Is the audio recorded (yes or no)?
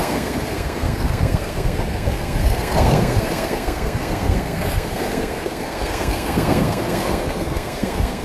no